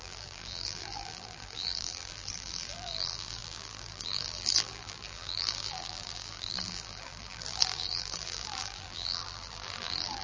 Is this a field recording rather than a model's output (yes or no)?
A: no